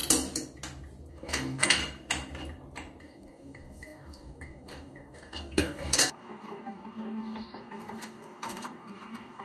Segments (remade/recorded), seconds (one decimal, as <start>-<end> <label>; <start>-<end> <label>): 0.0-1.1 recorded; 1.1-1.8 remade; 1.8-3.0 recorded; 3.0-9.4 remade

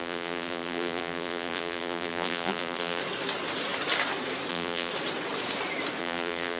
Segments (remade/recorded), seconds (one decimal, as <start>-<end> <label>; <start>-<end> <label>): 0.0-3.0 remade; 3.0-4.5 recorded; 4.5-4.9 remade; 4.9-6.0 recorded; 6.0-6.6 remade

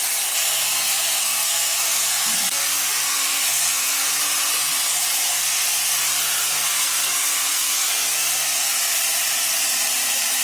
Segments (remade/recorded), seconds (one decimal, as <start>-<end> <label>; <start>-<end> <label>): 0.0-0.4 recorded; 0.4-4.2 remade; 4.2-5.3 recorded; 5.3-5.9 remade; 5.9-6.4 recorded; 6.4-8.7 remade; 8.7-10.4 recorded

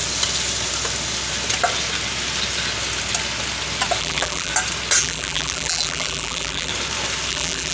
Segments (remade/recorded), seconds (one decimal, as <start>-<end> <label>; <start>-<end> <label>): 0.0-4.0 recorded; 4.0-4.5 remade; 4.5-5.0 recorded; 5.0-6.7 remade; 6.7-7.3 recorded; 7.3-7.7 remade

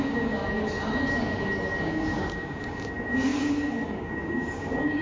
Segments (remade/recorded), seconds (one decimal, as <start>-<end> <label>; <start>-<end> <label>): 0.0-0.4 remade; 0.4-1.8 recorded; 1.8-5.0 remade